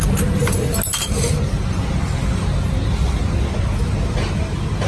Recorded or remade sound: recorded